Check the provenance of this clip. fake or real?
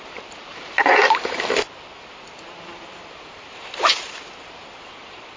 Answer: fake